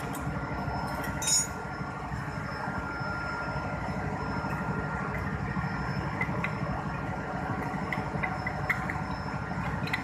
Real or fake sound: real